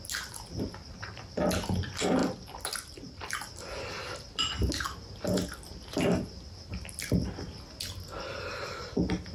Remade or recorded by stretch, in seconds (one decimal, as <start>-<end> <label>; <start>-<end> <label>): 0.0-2.2 recorded; 2.2-3.3 remade; 3.3-9.3 recorded

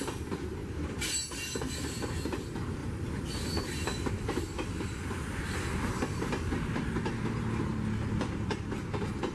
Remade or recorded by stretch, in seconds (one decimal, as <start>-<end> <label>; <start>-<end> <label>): 0.0-2.8 recorded; 2.8-5.4 remade; 5.4-7.7 recorded; 7.7-8.6 remade; 8.6-9.3 recorded

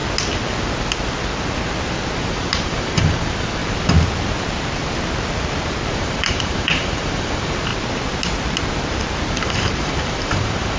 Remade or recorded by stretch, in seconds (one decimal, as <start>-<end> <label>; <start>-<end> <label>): 0.0-2.3 recorded; 2.3-3.6 remade; 3.6-5.9 recorded; 5.9-7.7 remade; 7.7-9.3 recorded; 9.3-10.8 remade

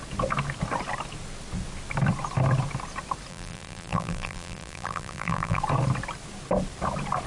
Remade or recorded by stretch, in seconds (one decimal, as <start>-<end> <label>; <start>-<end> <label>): 0.0-3.3 recorded; 3.3-5.6 remade; 5.6-7.3 recorded